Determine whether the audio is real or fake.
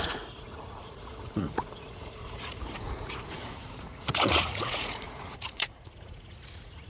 fake